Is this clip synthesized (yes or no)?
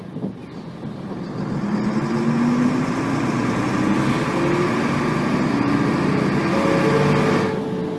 no